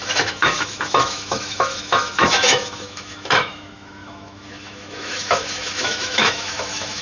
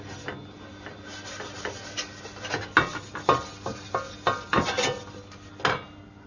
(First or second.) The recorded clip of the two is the second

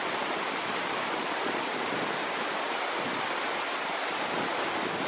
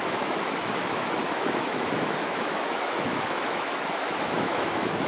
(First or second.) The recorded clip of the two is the first